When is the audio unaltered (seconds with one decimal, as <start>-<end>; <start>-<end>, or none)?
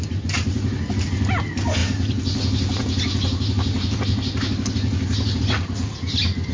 0.0-6.5